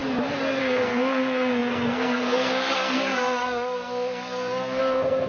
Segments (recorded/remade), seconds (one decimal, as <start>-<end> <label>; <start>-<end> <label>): 0.0-0.6 recorded; 0.6-5.3 remade